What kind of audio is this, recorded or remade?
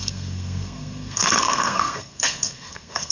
remade